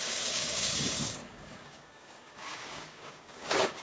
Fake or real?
fake